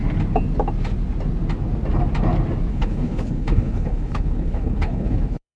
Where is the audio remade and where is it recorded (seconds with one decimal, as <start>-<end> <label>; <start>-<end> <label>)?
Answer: 0.0-2.7 recorded; 2.7-5.6 remade